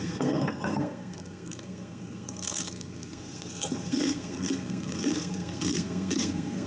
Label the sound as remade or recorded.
remade